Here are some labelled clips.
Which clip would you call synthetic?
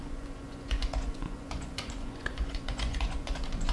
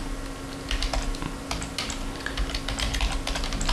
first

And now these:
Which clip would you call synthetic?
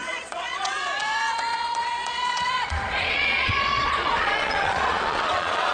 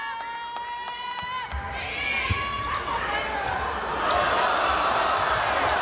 first